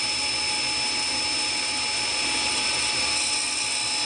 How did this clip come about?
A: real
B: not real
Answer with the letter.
A